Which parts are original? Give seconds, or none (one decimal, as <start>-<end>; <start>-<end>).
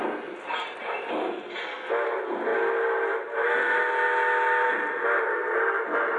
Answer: 0.0-6.2